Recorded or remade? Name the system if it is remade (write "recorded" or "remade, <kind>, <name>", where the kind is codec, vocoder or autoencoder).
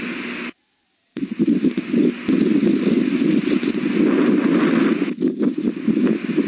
recorded